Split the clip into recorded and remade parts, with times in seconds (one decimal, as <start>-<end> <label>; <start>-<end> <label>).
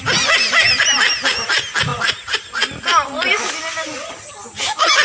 0.0-1.9 recorded; 1.9-2.8 remade; 2.8-5.0 recorded